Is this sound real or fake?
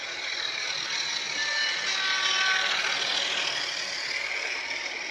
real